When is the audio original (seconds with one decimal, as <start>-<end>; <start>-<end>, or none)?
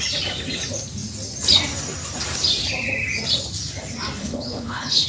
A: 0.0-4.2